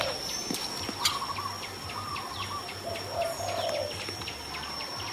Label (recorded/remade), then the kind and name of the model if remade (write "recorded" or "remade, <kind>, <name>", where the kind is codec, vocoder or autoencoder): recorded